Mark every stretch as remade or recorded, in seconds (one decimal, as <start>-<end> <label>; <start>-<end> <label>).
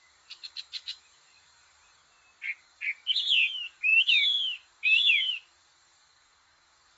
0.0-2.0 remade; 2.0-2.6 recorded; 2.6-7.0 remade